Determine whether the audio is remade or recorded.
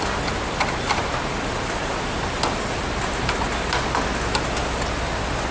recorded